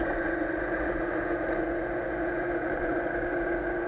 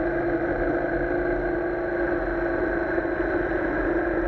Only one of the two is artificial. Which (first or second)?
first